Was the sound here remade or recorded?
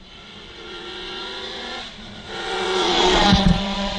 remade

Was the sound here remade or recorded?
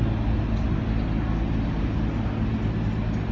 recorded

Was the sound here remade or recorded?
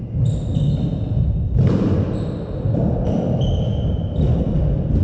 recorded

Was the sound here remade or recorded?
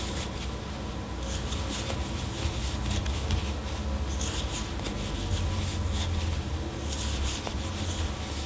recorded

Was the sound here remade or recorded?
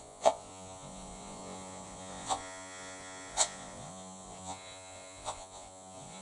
remade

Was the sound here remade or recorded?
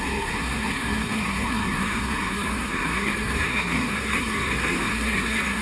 remade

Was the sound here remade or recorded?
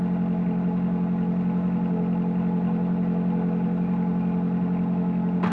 recorded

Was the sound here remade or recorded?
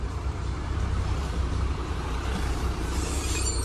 remade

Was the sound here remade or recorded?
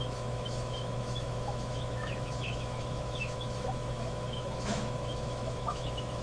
remade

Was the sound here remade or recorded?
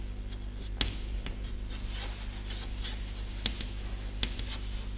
recorded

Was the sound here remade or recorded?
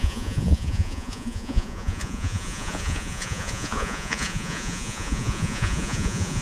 remade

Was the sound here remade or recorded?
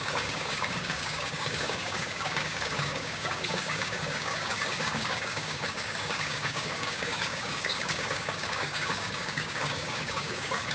remade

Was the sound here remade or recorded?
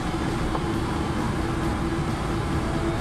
recorded